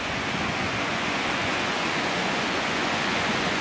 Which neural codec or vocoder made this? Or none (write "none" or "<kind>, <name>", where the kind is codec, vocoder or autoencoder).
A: vocoder, Vocos